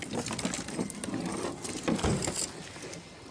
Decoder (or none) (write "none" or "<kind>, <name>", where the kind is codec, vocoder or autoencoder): none